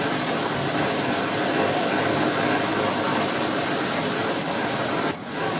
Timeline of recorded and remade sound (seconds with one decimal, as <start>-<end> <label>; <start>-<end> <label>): 0.0-5.6 recorded